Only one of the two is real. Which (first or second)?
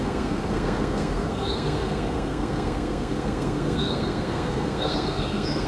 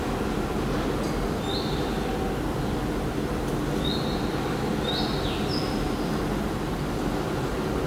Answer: second